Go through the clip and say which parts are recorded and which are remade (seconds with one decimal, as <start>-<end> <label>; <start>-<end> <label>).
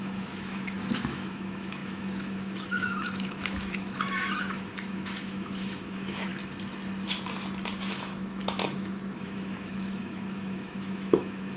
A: 0.0-6.3 remade; 6.3-7.9 recorded; 7.9-11.6 remade